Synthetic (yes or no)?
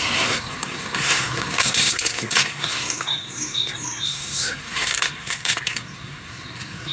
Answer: yes